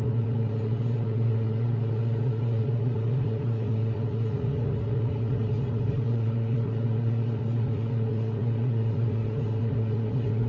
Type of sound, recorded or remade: remade